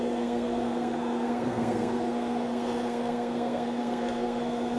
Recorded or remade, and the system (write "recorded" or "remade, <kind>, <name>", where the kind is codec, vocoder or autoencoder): remade, codec, SNAC